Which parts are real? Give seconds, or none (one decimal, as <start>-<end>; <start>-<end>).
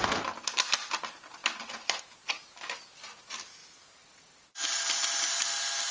0.0-5.9